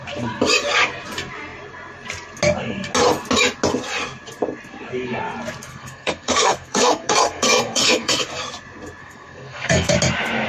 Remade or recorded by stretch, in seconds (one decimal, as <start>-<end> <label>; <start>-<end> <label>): 0.0-5.7 recorded; 5.7-8.2 remade; 8.2-9.0 recorded; 9.0-9.9 remade; 9.9-10.5 recorded